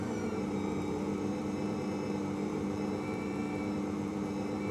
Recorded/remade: remade